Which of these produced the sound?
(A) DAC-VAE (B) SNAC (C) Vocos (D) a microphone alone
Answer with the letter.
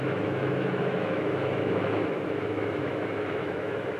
A